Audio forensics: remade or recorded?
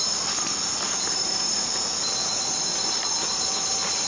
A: recorded